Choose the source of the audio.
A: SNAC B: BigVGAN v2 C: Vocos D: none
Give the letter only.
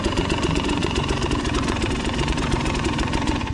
C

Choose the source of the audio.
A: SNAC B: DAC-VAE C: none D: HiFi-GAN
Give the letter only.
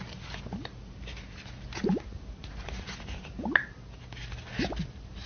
C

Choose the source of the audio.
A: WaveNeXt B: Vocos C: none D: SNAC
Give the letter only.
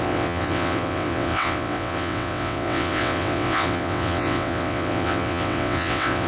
A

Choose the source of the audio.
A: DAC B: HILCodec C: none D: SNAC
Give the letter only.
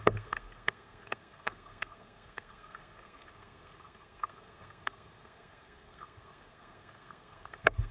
D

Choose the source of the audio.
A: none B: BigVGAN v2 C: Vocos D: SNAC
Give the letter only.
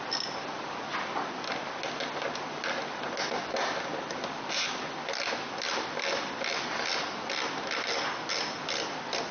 A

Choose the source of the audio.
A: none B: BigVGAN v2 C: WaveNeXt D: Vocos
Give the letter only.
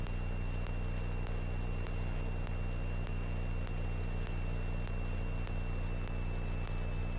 A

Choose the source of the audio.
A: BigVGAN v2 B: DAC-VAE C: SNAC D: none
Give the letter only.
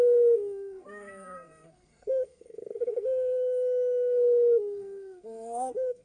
C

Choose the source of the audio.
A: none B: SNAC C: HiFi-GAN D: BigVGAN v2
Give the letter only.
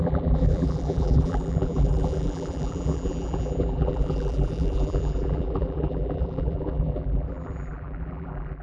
D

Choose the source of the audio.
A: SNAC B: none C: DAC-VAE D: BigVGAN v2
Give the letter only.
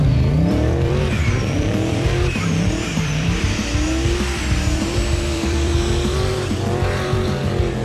D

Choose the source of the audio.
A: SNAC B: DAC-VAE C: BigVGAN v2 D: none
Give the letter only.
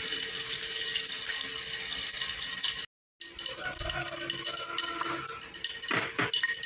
D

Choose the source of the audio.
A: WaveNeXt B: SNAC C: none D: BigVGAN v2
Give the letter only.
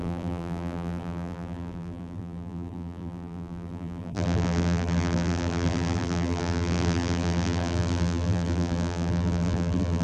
D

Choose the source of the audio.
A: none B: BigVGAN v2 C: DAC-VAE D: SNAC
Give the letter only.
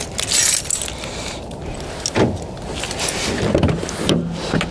A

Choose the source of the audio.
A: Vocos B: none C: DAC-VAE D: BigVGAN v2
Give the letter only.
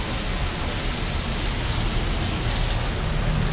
B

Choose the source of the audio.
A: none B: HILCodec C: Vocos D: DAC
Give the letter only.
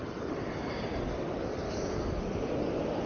A